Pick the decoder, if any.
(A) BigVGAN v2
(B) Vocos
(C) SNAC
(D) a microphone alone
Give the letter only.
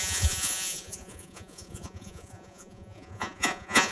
B